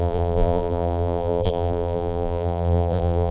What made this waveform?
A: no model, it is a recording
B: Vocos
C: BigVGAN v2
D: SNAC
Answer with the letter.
C